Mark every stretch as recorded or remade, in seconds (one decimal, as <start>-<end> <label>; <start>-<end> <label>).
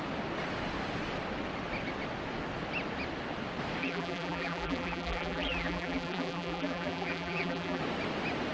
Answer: 0.0-3.8 recorded; 3.8-7.8 remade; 7.8-8.5 recorded